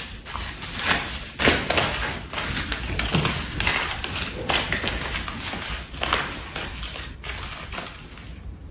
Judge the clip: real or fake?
real